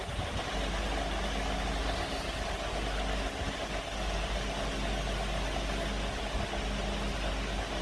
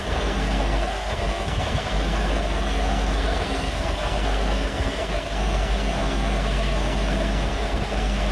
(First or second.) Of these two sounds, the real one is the first